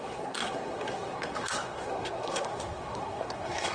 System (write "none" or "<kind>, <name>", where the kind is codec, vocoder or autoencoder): codec, SNAC